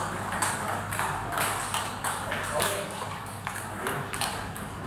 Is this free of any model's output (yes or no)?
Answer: no